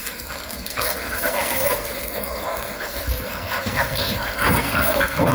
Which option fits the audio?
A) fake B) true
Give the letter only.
A